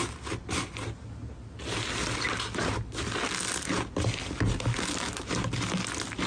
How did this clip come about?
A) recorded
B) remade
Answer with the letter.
A